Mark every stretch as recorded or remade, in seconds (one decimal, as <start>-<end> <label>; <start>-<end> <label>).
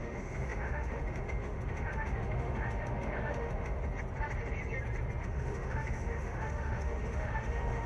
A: 0.0-3.8 remade; 3.8-5.2 recorded; 5.2-7.9 remade